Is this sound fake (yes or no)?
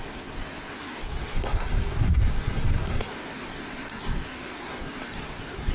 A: yes